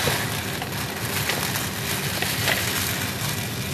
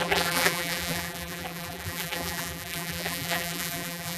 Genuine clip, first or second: first